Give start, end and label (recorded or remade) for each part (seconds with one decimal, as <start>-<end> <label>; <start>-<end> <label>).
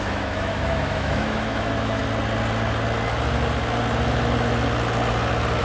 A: 0.0-2.0 remade; 2.0-5.6 recorded